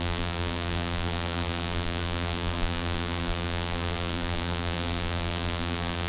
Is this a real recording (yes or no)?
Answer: no